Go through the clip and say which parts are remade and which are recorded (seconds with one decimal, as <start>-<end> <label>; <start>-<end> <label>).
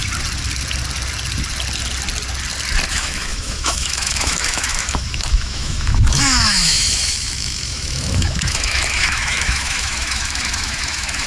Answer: 0.0-2.9 recorded; 2.9-11.3 remade